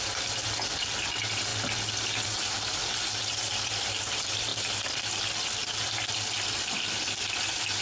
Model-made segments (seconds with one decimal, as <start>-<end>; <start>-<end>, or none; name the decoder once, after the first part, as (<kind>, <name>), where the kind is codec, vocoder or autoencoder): none